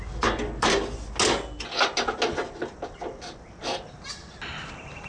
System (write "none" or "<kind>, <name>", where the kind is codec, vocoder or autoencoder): none